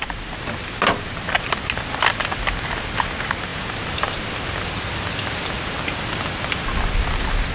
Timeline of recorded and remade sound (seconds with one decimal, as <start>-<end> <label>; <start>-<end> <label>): 0.0-7.5 recorded

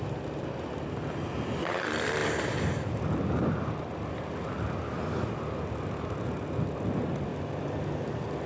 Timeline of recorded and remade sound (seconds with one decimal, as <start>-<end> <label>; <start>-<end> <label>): 0.0-8.5 recorded

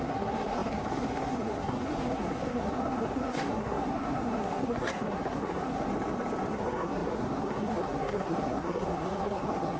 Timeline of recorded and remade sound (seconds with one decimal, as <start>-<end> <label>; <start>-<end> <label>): 0.0-5.9 remade; 5.9-6.5 recorded; 6.5-9.8 remade

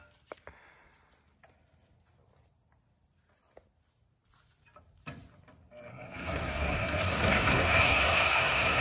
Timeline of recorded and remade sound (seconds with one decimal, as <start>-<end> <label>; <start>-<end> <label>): 0.0-5.9 recorded; 5.9-8.8 remade